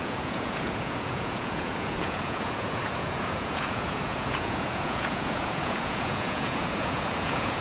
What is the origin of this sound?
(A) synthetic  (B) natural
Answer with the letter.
A